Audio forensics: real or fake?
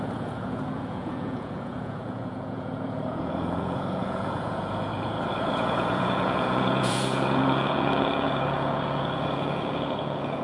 fake